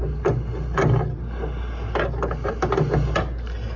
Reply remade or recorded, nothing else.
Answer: recorded